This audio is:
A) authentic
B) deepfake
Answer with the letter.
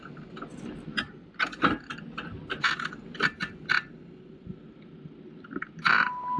A